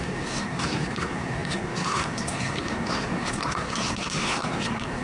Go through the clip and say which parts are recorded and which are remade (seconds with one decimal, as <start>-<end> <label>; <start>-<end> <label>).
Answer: 0.0-5.0 remade